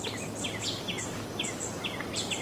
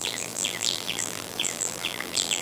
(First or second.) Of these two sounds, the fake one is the second